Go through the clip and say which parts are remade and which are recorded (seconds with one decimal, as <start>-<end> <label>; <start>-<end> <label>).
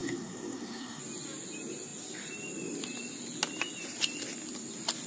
0.0-1.0 remade; 1.0-5.1 recorded